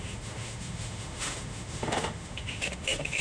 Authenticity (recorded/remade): remade